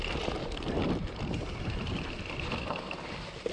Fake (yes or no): no